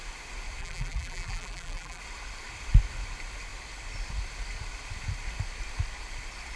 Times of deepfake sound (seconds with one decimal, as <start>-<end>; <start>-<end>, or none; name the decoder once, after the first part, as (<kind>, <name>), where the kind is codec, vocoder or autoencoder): 0.6-2.0 (vocoder, BigVGAN v2)